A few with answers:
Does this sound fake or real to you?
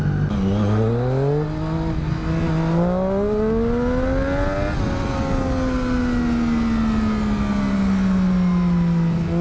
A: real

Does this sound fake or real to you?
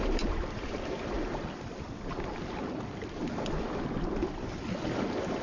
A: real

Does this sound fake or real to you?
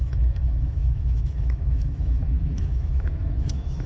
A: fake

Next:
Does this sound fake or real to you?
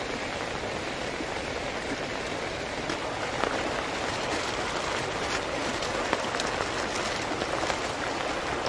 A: real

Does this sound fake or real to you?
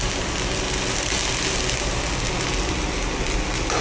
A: real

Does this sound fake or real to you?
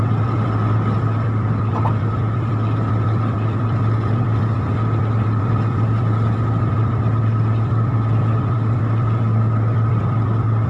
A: fake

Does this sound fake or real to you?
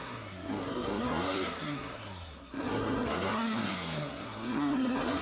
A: fake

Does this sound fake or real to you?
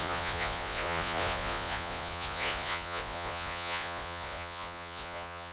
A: fake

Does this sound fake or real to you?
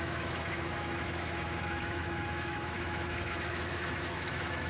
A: fake